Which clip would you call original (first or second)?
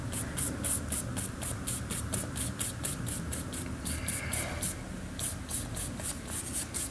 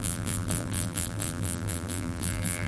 first